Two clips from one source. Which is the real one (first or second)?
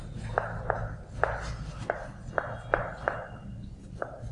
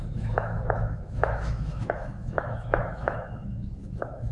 first